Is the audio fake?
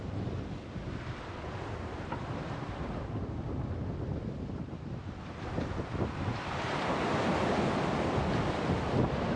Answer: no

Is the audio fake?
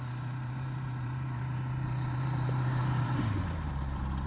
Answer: yes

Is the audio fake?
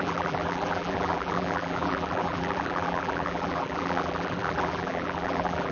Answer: yes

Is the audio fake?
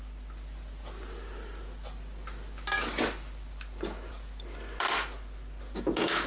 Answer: no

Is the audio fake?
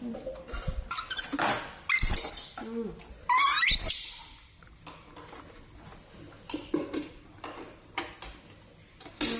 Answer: no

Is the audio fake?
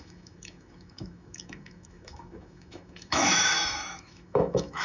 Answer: yes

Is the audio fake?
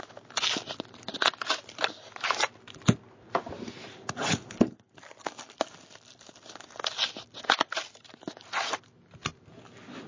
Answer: no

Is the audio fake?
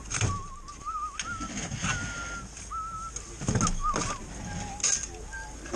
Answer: no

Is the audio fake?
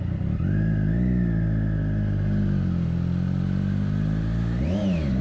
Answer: no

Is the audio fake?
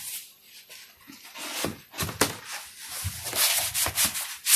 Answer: no